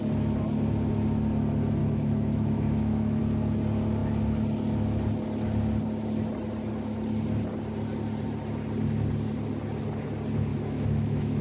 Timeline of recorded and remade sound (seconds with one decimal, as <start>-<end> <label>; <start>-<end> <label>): 0.0-1.8 recorded; 1.8-3.2 remade; 3.2-10.5 recorded; 10.5-11.4 remade